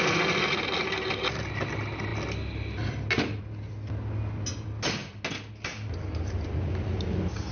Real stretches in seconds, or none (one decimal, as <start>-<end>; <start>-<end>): 0.0-7.5